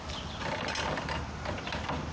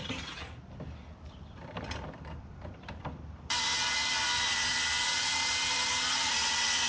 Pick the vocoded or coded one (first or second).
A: second